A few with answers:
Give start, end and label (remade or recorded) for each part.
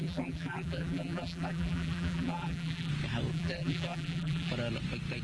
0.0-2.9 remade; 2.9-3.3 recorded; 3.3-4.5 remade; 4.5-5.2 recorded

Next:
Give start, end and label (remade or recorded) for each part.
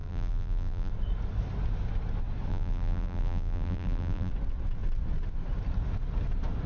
0.0-0.9 remade; 0.9-2.5 recorded; 2.5-4.3 remade; 4.3-6.7 recorded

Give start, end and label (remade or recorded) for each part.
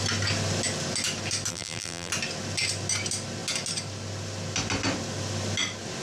0.0-1.5 recorded; 1.5-2.1 remade; 2.1-6.0 recorded